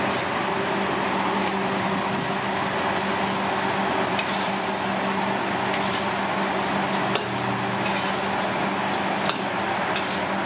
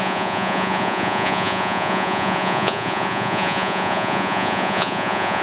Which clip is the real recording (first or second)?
first